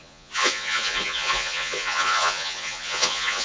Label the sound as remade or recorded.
remade